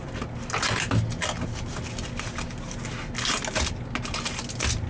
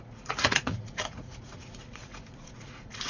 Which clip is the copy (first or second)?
second